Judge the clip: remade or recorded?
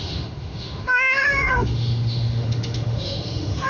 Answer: remade